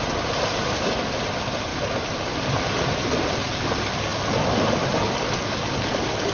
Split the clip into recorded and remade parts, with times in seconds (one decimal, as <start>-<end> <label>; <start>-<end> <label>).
0.0-6.3 recorded